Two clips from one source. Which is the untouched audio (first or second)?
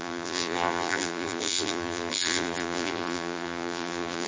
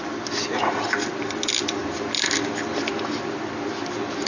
second